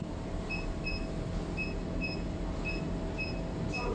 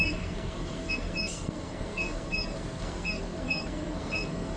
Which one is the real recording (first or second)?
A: first